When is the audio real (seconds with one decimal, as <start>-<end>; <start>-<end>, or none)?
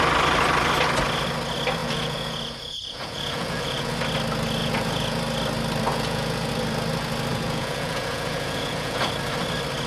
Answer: 0.0-1.8; 3.9-4.6; 5.2-5.9; 6.5-7.3; 9.1-9.9